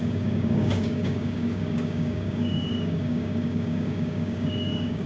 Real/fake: fake